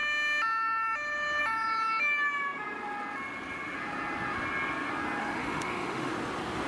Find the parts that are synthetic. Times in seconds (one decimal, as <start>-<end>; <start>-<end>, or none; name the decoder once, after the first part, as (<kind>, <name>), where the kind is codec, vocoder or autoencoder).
5.2-6.1 (autoencoder, DAC-VAE)